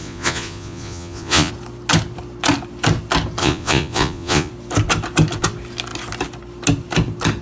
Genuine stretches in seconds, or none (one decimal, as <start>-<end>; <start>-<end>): 1.5-3.4; 4.5-7.4